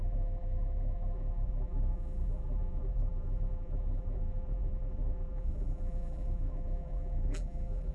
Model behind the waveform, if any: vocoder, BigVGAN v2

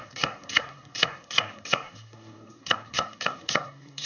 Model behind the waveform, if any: codec, SNAC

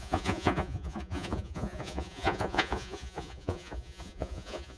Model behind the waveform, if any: vocoder, Vocos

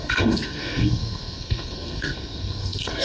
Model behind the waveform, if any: codec, SNAC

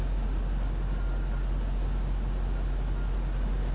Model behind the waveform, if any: none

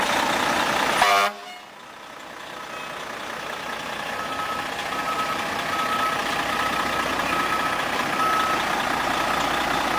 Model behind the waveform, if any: none